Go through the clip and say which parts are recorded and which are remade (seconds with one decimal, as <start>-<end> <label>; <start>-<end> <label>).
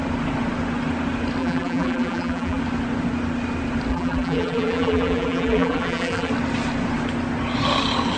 0.0-1.4 recorded; 1.4-2.6 remade; 2.6-3.9 recorded; 3.9-6.3 remade; 6.3-8.2 recorded